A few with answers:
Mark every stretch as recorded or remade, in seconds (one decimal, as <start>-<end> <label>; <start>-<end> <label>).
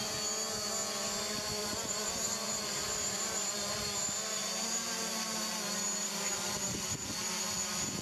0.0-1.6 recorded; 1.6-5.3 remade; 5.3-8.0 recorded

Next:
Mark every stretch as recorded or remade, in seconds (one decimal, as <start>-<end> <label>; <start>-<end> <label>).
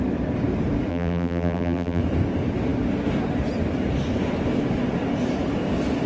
0.0-0.9 recorded; 0.9-2.0 remade; 2.0-6.1 recorded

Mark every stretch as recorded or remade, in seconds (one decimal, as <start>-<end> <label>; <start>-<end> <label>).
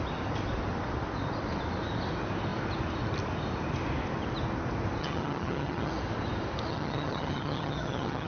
0.0-5.0 recorded; 5.0-5.9 remade; 5.9-6.7 recorded; 6.7-8.3 remade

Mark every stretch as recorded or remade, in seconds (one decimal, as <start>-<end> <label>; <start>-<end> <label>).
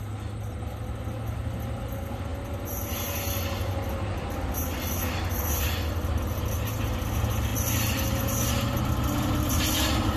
0.0-10.2 recorded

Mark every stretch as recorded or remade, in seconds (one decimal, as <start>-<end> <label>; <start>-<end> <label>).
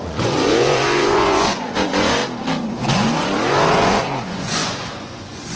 0.0-2.2 remade; 2.2-2.7 recorded; 2.7-5.6 remade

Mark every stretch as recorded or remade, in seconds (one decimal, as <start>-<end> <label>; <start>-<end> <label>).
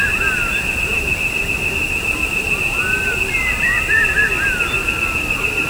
0.0-5.7 recorded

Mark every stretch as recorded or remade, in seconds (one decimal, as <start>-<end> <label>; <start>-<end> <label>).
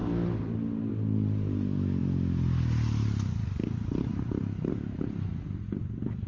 0.0-4.1 recorded; 4.1-4.7 remade; 4.7-6.3 recorded